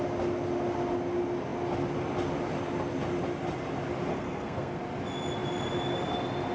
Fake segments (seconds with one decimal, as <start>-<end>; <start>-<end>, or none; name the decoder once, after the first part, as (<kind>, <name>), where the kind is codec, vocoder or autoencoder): 4.1-4.8 (codec, SNAC)